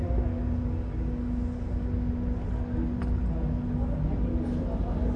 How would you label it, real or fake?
real